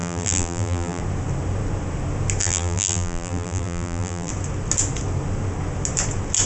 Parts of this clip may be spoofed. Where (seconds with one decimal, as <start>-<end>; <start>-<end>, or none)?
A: 0.0-1.0; 2.4-4.3

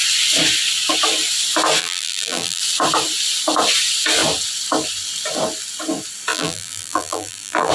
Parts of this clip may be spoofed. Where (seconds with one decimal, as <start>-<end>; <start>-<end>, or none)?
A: 1.8-2.6; 6.3-7.7

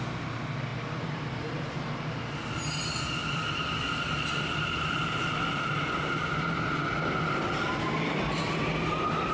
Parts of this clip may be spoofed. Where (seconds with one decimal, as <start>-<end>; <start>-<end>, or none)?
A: 0.7-2.2; 3.2-7.8

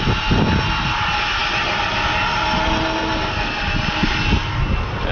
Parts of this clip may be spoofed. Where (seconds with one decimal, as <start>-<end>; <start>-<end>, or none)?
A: none

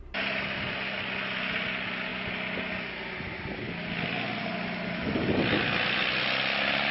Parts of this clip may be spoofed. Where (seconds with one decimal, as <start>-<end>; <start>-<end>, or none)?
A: none

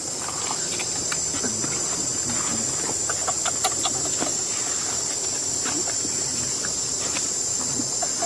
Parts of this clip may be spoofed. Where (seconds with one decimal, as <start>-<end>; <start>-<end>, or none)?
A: 2.5-3.4; 6.3-7.3

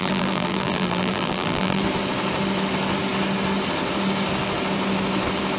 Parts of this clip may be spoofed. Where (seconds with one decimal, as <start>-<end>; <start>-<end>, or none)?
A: 0.0-1.8

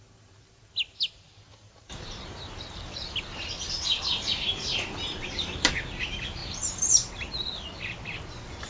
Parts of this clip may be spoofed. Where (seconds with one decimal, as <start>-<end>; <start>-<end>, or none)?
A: 1.5-5.7; 6.4-7.4